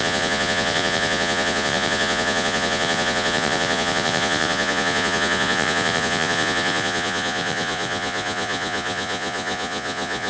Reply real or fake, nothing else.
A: fake